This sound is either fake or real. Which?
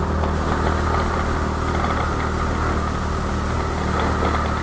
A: real